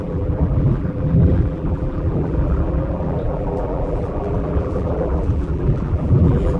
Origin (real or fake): fake